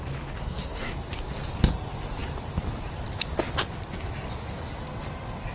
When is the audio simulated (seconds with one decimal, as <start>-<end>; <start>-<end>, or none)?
0.4-0.9